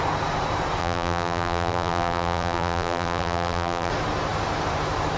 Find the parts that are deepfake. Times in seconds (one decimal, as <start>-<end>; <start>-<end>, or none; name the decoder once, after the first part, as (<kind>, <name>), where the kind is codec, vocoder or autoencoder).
0.8-3.9 (vocoder, BigVGAN v2)

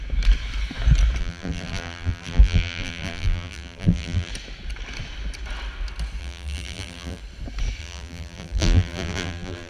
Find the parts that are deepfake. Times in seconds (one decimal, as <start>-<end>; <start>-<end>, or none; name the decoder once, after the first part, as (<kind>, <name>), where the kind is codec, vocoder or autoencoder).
1.2-4.3 (vocoder, BigVGAN v2); 6.2-7.2; 7.8-9.7

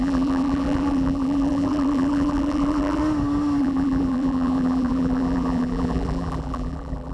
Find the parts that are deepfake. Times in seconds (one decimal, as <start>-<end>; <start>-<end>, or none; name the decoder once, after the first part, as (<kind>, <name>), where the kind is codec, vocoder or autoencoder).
0.0-3.0 (vocoder, BigVGAN v2); 3.6-7.1

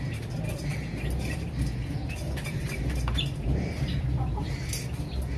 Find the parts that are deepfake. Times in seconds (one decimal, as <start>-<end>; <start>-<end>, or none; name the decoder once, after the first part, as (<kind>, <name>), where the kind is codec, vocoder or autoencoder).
0.7-1.6 (vocoder, BigVGAN v2); 2.0-4.7

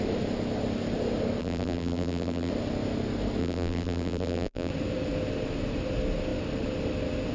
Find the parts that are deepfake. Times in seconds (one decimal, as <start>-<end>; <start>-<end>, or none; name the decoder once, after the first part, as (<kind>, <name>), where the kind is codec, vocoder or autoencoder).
1.4-2.5 (vocoder, BigVGAN v2); 3.4-4.7

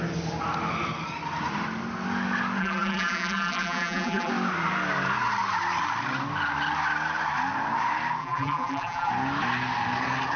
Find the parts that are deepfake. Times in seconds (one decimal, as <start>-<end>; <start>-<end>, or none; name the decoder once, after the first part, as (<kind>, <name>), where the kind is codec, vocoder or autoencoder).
2.6-4.3 (vocoder, BigVGAN v2); 8.2-9.1

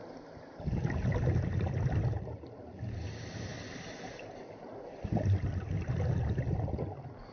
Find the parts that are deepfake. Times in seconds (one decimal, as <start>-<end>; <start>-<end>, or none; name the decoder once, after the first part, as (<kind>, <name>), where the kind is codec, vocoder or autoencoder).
3.5-5.4 (vocoder, BigVGAN v2)

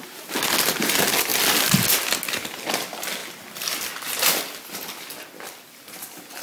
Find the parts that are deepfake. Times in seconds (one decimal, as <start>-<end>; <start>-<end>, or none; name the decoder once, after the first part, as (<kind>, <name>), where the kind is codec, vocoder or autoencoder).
3.2-6.0 (vocoder, BigVGAN v2)